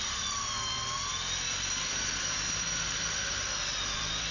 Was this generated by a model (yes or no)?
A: yes